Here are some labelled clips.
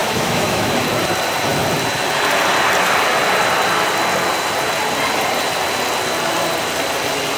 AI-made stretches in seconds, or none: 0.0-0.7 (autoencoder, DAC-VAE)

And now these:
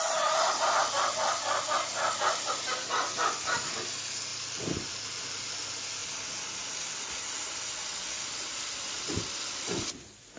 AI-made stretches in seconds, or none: none